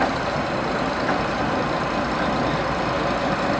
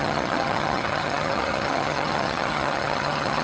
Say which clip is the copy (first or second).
second